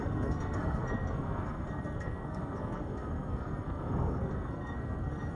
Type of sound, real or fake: fake